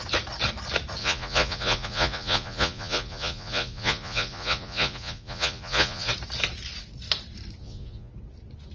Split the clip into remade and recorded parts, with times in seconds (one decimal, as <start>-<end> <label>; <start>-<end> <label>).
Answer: 0.0-1.0 recorded; 1.0-6.1 remade; 6.1-7.6 recorded; 7.6-8.1 remade; 8.1-8.7 recorded